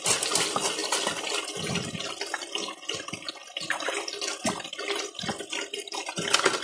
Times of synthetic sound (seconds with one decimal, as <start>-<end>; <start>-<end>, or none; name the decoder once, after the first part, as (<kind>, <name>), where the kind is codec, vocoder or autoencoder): none